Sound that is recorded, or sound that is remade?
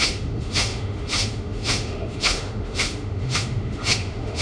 remade